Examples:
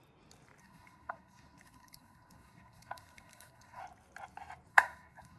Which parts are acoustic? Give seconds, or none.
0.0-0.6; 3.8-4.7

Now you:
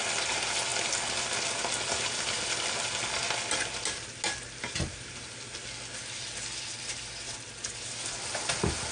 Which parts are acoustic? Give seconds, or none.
0.0-8.9

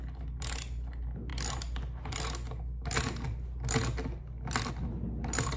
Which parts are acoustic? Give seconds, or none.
0.0-5.6

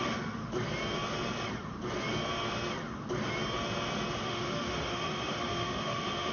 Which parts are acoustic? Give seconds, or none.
0.4-4.2

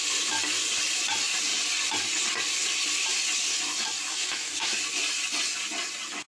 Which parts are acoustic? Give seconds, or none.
0.0-4.1; 4.8-6.3